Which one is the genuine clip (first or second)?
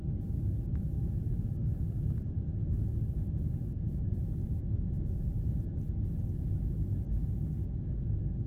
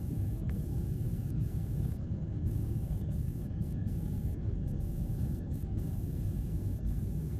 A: first